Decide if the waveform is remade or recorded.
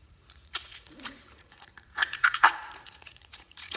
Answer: remade